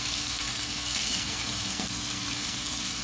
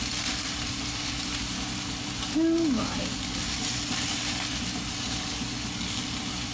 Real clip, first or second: second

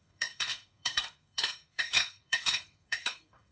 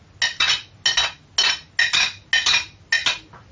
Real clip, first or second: second